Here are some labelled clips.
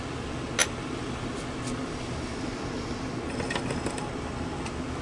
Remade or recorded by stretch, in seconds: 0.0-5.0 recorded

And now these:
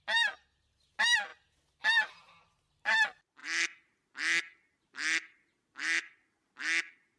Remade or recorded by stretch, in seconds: 0.0-7.2 recorded

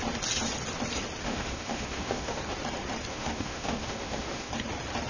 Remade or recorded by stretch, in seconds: 0.0-1.2 recorded; 1.2-2.4 remade; 2.4-3.1 recorded; 3.1-4.5 remade; 4.5-5.1 recorded

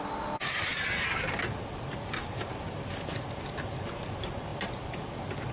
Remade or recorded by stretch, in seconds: 0.0-5.5 recorded

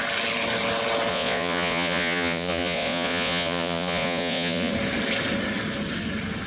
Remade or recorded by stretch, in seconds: 0.0-1.1 recorded; 1.1-4.7 remade; 4.7-6.5 recorded

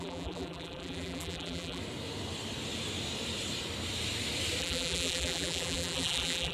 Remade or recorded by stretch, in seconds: 0.0-1.8 remade; 1.8-4.6 recorded; 4.6-6.5 remade

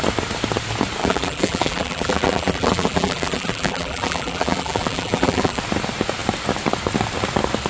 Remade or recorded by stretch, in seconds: 0.0-1.0 recorded; 1.0-5.6 remade; 5.6-7.7 recorded

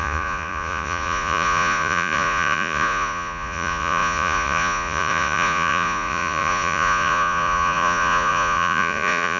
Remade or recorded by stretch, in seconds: 0.0-9.4 remade